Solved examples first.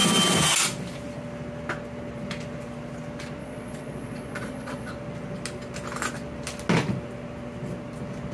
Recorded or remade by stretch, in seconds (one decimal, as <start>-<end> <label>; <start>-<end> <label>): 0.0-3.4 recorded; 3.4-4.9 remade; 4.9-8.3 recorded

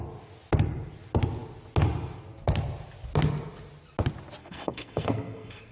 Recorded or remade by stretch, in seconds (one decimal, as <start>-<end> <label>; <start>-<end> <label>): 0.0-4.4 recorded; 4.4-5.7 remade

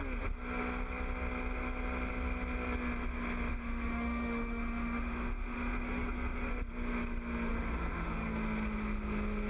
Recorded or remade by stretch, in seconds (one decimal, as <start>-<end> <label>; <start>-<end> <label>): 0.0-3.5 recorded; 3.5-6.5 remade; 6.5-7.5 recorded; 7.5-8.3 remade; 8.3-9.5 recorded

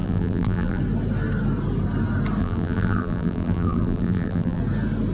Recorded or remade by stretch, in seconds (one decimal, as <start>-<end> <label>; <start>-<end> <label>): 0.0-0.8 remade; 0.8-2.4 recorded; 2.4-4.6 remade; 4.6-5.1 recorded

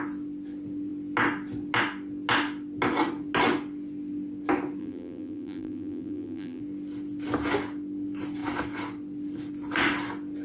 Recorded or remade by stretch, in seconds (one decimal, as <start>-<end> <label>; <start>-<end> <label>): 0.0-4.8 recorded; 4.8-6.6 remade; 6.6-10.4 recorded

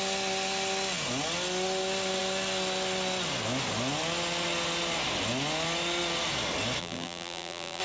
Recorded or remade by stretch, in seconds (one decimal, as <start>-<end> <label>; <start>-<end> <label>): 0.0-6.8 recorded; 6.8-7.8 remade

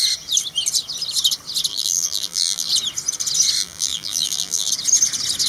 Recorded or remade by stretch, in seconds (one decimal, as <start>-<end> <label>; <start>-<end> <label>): 0.0-1.7 recorded; 1.7-2.7 remade; 2.7-3.6 recorded; 3.6-4.7 remade; 4.7-5.5 recorded

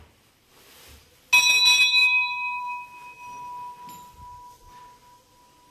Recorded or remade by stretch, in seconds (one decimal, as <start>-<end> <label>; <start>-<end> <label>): 0.0-5.7 recorded